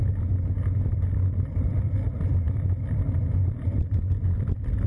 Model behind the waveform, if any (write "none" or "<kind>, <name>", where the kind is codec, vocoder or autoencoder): vocoder, BigVGAN v2